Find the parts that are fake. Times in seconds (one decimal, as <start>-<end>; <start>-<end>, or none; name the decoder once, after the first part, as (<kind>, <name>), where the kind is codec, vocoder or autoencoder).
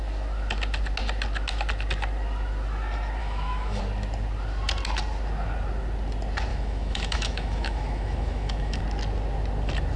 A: 3.2-3.8 (autoencoder, DAC-VAE); 6.5-8.8